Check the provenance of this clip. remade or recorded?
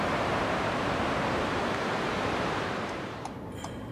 remade